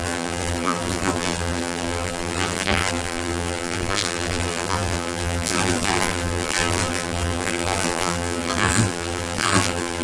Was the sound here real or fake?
fake